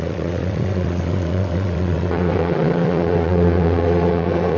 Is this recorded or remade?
remade